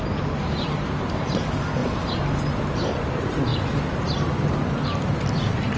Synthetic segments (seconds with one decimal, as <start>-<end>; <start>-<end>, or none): 0.4-1.3; 1.8-3.0